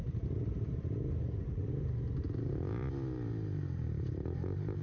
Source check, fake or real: fake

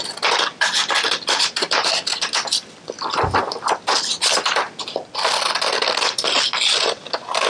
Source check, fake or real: real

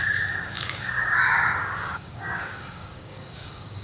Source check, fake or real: fake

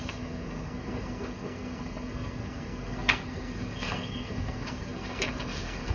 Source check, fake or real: fake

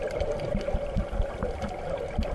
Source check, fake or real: fake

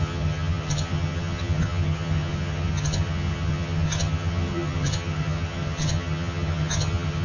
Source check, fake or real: fake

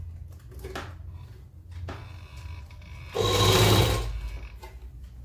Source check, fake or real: real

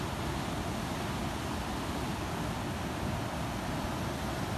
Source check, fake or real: real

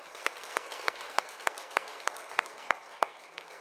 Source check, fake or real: fake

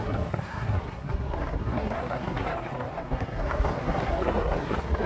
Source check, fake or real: fake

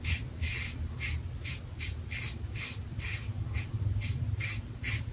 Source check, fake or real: fake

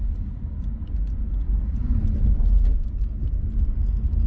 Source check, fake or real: real